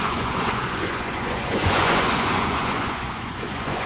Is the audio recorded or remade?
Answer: remade